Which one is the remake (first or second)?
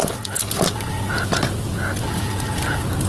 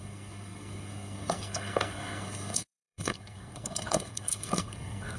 second